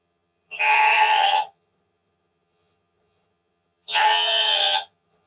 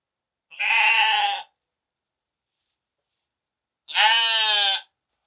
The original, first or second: second